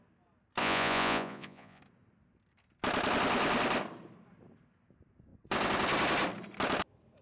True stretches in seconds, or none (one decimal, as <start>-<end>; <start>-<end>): 0.0-0.6; 1.8-7.2